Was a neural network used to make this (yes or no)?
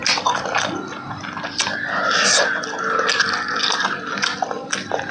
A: no